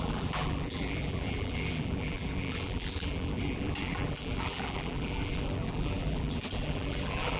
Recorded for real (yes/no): no